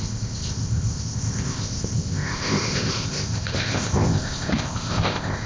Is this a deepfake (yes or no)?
yes